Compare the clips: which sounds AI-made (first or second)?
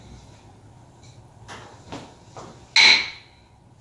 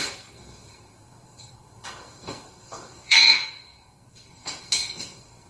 second